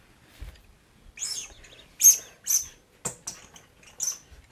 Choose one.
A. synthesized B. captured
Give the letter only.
B